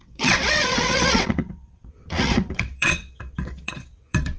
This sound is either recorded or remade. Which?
remade